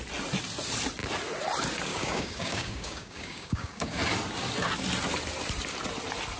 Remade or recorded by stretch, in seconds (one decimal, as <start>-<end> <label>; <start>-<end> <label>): 0.0-1.9 recorded; 1.9-4.0 remade; 4.0-6.4 recorded